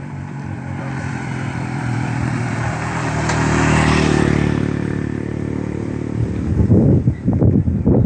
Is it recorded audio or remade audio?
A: remade